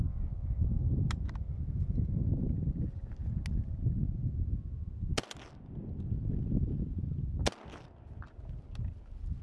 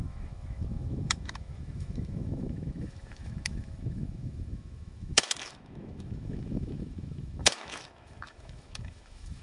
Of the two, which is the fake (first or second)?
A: second